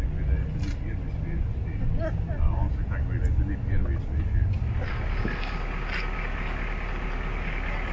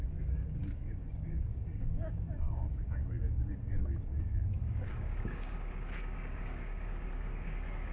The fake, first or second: second